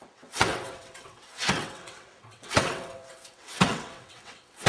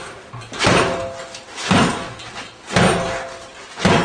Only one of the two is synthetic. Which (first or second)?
first